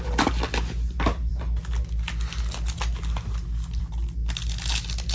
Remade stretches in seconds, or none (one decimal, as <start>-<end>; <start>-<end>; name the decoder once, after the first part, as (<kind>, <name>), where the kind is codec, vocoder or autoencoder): none